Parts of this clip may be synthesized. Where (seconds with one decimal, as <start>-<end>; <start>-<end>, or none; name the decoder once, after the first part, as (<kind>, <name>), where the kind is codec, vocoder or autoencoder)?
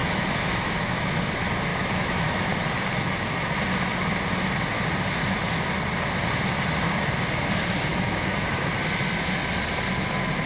0.0-1.1 (autoencoder, DAC-VAE); 1.7-2.5; 7.9-8.7